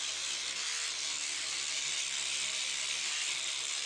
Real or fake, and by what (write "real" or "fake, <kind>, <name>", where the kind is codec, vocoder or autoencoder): real